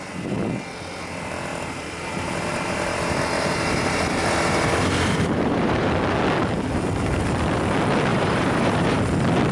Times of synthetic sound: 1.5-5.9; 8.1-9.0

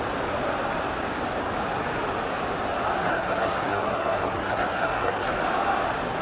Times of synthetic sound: 3.1-5.3

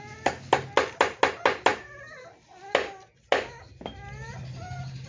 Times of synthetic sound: none

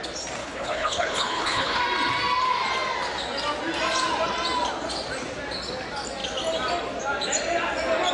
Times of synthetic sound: 0.4-1.8

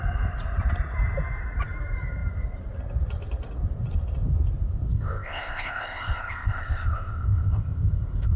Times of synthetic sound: 4.9-8.4

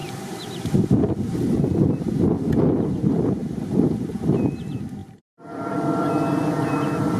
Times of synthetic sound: 3.4-4.5; 5.0-6.7

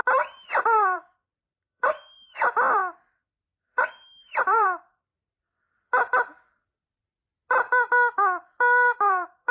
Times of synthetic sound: 0.0-2.8; 3.6-5.1; 8.6-9.5

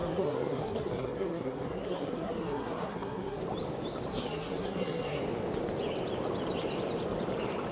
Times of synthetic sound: 0.0-3.4; 4.1-5.2